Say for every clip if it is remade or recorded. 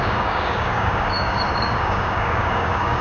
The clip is remade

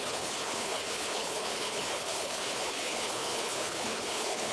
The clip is remade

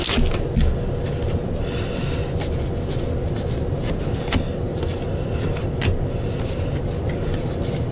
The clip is recorded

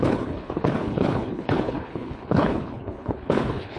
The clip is remade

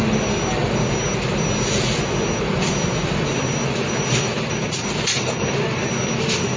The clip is recorded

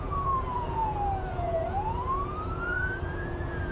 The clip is remade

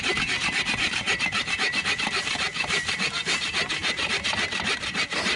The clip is remade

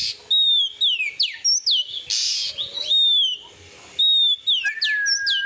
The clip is recorded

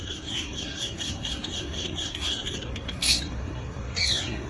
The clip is remade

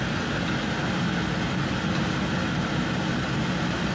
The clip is recorded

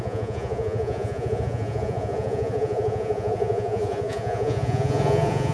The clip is remade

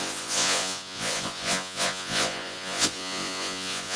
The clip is remade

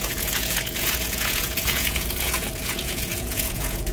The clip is remade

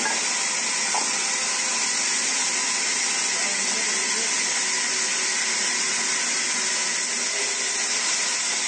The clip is recorded